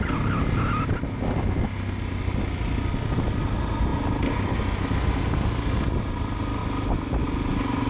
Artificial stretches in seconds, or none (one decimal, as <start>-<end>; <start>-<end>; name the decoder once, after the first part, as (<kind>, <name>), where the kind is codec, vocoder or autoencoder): none